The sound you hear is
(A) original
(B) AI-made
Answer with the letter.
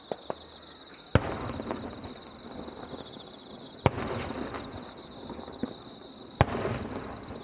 A